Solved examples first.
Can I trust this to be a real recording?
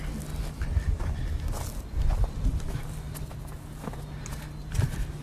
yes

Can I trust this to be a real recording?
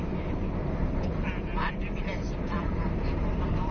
no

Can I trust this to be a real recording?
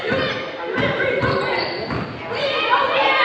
yes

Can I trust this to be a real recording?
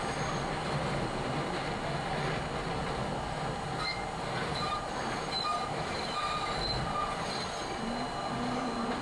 yes